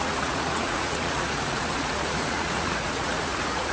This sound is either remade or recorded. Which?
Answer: remade